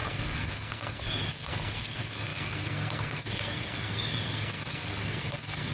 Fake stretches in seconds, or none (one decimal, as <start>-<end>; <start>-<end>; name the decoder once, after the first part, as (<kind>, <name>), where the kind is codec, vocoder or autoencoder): 0.0-5.7 (codec, SNAC)